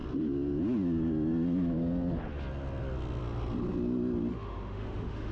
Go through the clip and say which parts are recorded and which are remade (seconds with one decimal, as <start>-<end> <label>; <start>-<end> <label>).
0.0-4.3 recorded; 4.3-5.3 remade